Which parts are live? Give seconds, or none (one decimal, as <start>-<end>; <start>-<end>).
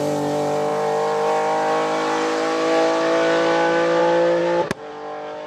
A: 0.0-5.5